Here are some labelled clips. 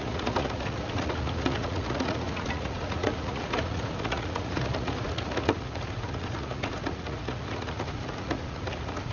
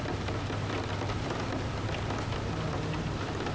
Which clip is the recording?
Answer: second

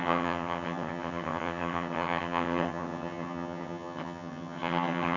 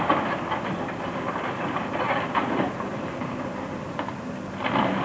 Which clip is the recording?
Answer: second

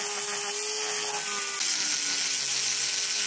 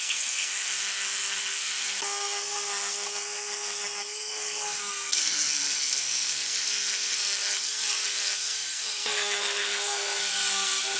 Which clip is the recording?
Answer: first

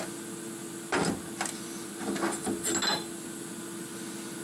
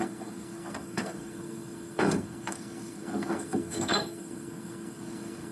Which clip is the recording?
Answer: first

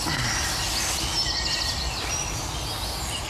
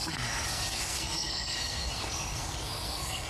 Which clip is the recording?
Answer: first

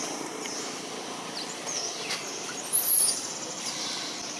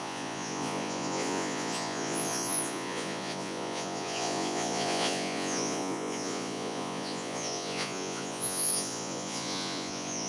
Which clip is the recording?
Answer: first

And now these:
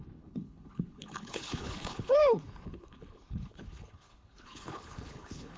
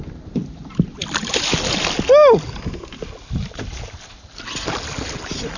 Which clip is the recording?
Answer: second